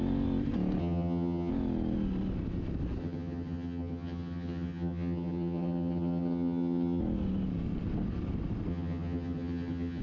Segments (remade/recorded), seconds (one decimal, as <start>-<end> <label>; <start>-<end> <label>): 0.0-0.8 recorded; 0.8-1.5 remade; 1.5-3.0 recorded; 3.0-7.0 remade; 7.0-8.7 recorded; 8.7-10.0 remade